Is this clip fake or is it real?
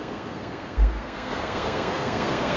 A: fake